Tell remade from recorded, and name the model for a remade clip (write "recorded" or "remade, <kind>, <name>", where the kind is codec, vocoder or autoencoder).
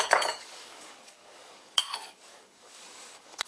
remade, codec, DAC